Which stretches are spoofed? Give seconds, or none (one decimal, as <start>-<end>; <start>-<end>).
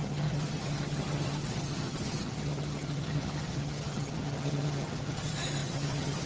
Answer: 0.0-6.3